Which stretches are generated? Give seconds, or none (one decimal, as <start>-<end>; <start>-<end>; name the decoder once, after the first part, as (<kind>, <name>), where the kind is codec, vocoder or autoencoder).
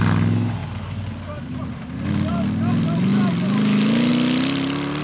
none